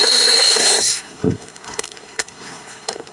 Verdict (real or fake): fake